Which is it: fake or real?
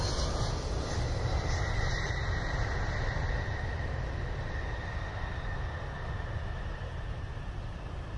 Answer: real